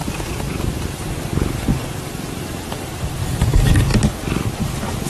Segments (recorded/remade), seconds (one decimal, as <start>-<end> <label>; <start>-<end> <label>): 0.0-3.9 recorded; 3.9-5.1 remade